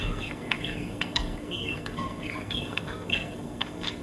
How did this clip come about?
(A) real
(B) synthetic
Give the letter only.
B